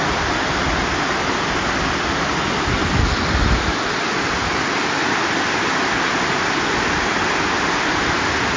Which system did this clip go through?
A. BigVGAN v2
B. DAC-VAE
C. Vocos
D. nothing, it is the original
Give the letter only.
D